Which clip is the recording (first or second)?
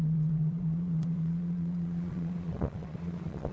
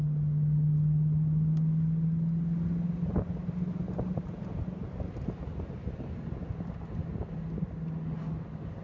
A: second